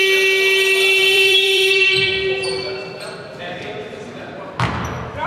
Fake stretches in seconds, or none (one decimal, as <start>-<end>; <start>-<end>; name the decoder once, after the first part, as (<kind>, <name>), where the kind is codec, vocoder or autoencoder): 1.0-4.2 (vocoder, BigVGAN v2)